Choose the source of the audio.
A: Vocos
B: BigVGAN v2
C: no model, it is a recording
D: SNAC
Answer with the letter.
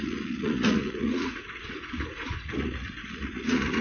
A